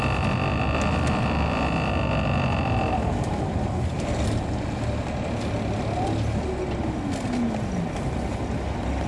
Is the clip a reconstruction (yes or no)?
no